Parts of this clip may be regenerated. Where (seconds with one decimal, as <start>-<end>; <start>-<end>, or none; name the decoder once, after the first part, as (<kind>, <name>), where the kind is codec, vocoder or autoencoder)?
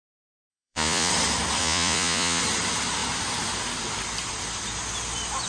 0.5-1.1 (vocoder, Vocos); 1.6-2.4